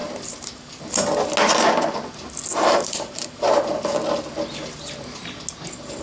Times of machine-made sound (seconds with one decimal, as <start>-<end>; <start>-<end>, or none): 0.0-0.8; 2.5-3.7